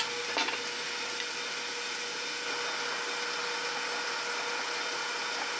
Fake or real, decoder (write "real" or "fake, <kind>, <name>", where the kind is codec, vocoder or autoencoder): real